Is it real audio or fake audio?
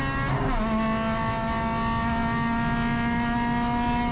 real